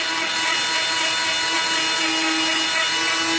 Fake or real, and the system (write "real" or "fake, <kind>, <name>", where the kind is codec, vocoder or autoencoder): real